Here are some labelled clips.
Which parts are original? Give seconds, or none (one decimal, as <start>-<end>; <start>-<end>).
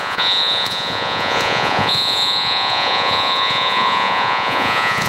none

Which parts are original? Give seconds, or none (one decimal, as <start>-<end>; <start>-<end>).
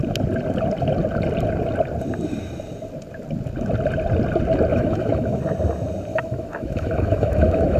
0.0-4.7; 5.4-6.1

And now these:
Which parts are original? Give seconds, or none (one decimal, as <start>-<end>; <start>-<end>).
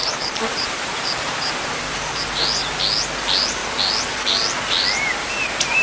1.8-5.8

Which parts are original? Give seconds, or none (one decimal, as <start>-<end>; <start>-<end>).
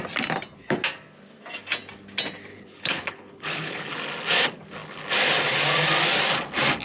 0.0-2.5; 3.9-6.8